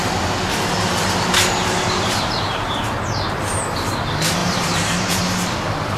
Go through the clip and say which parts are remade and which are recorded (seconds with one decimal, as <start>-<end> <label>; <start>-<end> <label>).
0.0-0.5 recorded; 0.5-3.6 remade; 3.6-4.4 recorded; 4.4-5.2 remade; 5.2-6.0 recorded